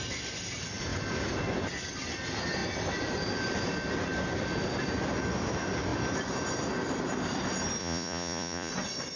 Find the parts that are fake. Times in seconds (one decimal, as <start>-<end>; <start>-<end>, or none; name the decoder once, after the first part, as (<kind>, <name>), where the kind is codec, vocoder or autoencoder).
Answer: 7.8-8.7 (vocoder, Vocos)